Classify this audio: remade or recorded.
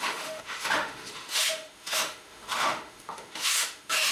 remade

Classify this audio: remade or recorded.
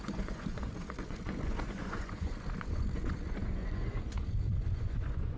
remade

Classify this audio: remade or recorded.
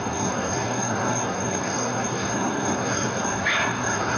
remade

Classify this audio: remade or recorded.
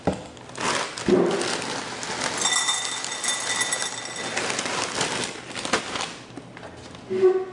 recorded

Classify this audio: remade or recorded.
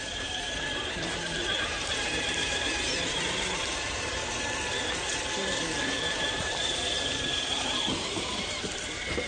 remade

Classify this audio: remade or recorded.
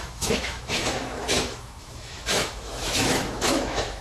remade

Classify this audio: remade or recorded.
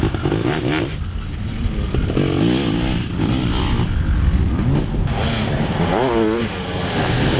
recorded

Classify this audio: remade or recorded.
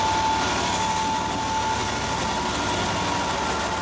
recorded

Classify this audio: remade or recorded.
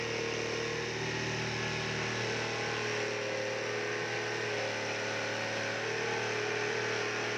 recorded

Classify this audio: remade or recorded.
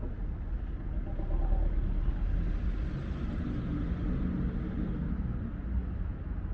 recorded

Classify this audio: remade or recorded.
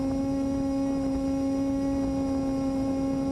recorded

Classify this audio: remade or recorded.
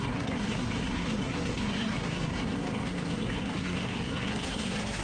remade